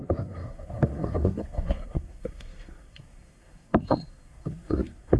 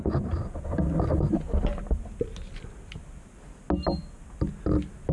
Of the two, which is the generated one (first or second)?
first